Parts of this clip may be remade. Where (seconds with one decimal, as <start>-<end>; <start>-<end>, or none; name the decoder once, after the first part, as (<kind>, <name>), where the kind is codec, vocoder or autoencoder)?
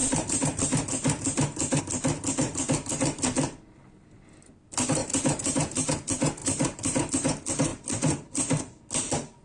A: 0.0-1.8 (vocoder, BigVGAN v2); 5.0-5.9; 6.4-7.1